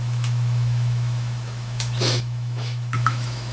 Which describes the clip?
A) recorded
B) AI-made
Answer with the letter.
B